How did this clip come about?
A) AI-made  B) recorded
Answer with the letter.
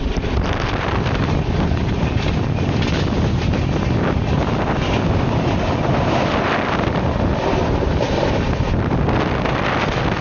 B